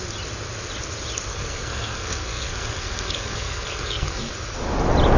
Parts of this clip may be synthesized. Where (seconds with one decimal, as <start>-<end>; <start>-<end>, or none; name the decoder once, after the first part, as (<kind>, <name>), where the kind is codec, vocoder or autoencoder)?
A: 1.3-4.3 (codec, SNAC)

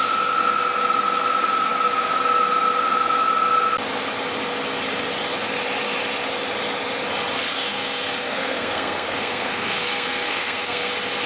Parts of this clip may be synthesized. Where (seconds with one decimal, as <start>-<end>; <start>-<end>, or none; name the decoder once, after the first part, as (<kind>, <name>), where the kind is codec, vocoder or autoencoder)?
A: 7.5-10.9 (codec, SNAC)

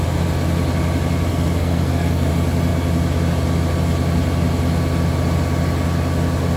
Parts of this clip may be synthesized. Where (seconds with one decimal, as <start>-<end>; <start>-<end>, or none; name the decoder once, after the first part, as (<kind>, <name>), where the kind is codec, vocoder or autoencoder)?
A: 1.3-2.3 (codec, SNAC)

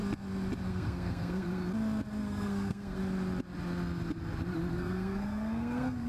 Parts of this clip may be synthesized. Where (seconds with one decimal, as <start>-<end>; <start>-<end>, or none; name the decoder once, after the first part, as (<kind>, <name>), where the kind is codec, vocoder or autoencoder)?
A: 0.7-1.6 (codec, SNAC); 2.2-3.0; 4.7-6.1

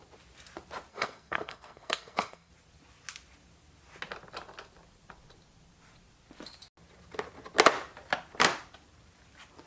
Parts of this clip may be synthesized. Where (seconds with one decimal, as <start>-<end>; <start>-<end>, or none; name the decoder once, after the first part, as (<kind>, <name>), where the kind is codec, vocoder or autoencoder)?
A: 0.9-2.5 (codec, SNAC)

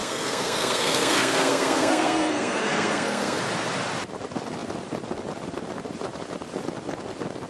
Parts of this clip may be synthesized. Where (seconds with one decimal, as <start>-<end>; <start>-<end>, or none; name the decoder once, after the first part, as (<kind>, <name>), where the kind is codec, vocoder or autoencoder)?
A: 0.0-3.4 (codec, SNAC)

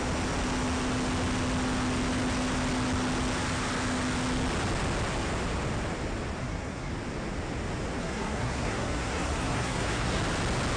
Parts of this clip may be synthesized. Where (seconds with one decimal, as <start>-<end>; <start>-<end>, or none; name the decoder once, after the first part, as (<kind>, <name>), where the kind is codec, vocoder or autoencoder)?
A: 6.4-6.9 (codec, SNAC); 8.0-10.2

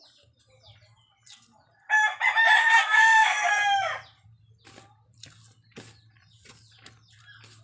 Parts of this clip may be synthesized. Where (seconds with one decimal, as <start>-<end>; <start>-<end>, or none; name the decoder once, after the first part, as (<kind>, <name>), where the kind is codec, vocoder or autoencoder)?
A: 2.6-3.5 (codec, SNAC)